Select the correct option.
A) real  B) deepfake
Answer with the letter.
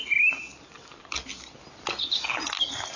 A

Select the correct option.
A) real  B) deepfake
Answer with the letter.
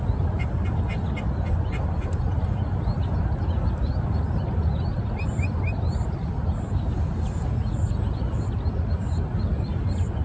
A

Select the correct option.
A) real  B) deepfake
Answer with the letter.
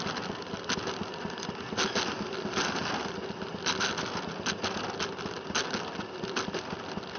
A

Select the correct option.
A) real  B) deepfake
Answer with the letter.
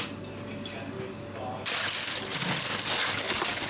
A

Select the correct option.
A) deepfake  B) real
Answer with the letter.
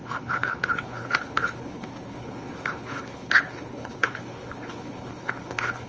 A